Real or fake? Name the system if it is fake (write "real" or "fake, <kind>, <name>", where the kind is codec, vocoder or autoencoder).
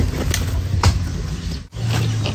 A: real